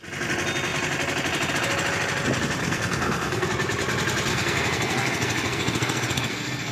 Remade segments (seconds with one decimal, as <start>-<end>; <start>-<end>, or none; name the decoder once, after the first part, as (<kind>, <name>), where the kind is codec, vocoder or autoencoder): 2.6-3.5 (codec, SNAC); 4.3-6.7